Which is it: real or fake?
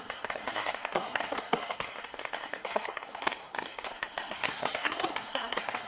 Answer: fake